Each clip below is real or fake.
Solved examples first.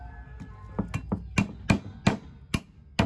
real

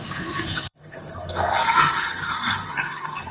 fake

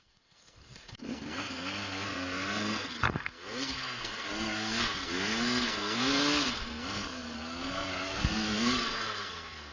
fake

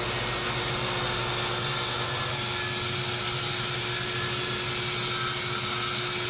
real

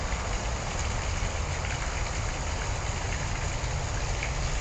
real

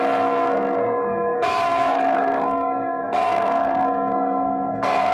fake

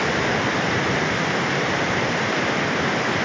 real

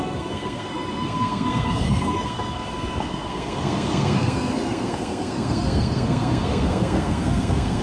fake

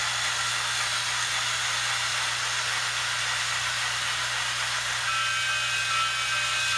real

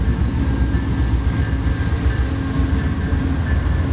real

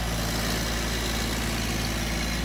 real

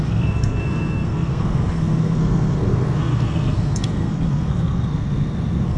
fake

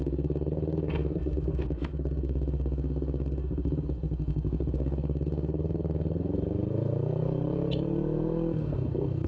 fake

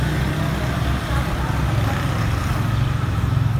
real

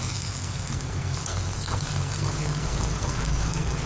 fake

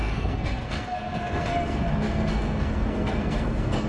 fake